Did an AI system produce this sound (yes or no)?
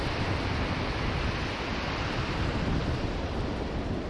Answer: no